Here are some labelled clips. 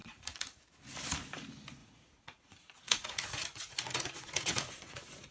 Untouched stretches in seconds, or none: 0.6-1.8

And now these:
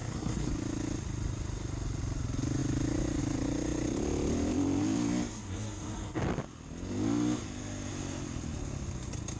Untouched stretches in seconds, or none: 0.5-5.3; 6.2-9.4